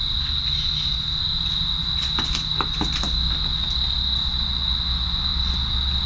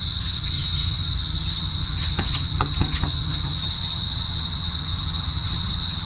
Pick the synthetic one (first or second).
second